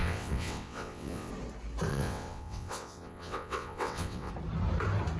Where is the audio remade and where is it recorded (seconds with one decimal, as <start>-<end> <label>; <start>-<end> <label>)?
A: 0.0-1.3 remade; 1.3-1.9 recorded; 1.9-4.3 remade; 4.3-5.2 recorded